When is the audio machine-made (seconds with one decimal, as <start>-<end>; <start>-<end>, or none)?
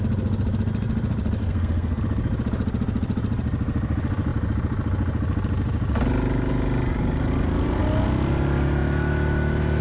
1.4-2.0